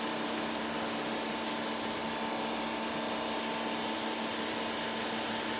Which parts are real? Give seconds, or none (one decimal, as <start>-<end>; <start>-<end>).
0.0-5.6